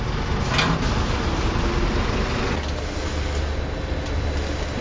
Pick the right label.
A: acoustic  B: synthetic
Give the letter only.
A